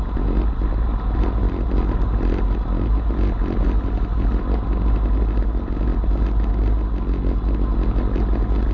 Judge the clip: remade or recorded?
recorded